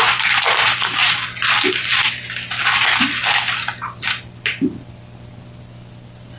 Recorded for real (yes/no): yes